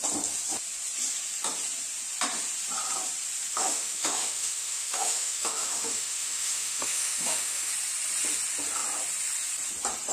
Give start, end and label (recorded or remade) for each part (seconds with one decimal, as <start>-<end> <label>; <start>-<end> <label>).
0.0-3.5 recorded; 3.5-7.7 remade; 7.7-10.1 recorded